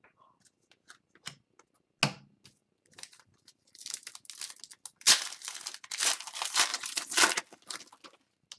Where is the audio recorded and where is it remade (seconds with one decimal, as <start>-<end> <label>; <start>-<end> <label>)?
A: 0.0-2.6 recorded; 2.6-4.1 remade; 4.1-6.7 recorded; 6.7-7.2 remade; 7.2-8.6 recorded